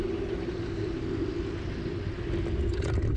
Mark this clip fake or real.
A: real